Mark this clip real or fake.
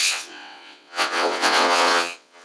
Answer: fake